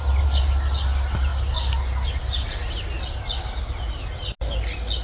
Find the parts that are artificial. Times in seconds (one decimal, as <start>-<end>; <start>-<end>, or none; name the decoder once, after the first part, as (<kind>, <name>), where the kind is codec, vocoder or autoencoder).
none